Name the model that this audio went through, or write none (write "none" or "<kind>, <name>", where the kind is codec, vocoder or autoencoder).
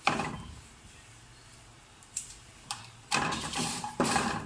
vocoder, BigVGAN v2